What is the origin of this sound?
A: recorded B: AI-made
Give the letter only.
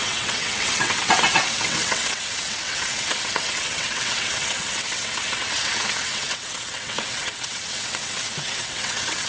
B